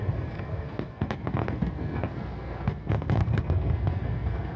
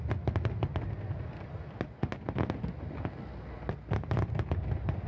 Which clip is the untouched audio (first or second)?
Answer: second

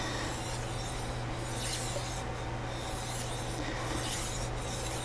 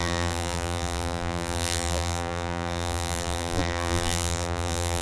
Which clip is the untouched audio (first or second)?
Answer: first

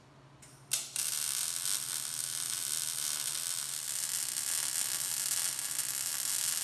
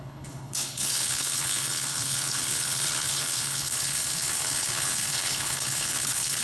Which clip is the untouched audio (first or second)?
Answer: first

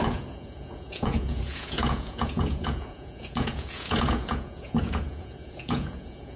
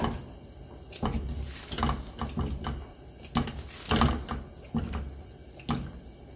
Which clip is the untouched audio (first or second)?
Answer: second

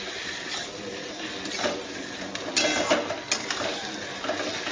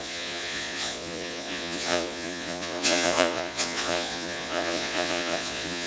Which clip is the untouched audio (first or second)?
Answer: first